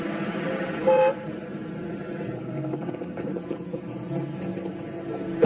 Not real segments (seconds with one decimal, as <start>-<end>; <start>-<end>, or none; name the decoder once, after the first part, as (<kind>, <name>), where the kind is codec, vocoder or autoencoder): 2.4-3.3 (codec, DAC)